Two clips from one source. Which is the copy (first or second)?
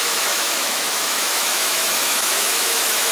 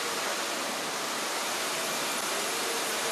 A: first